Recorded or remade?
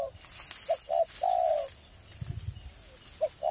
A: recorded